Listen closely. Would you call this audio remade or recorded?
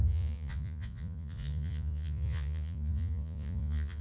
remade